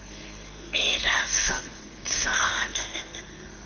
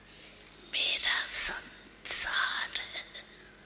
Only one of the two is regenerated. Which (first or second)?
first